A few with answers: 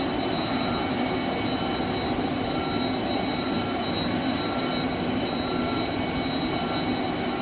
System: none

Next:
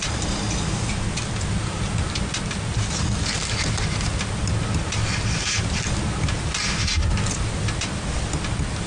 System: none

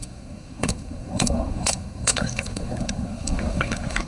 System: codec, SNAC